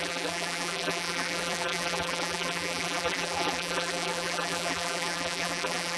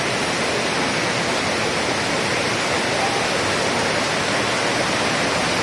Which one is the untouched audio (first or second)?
second